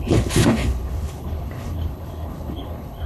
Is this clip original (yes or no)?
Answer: no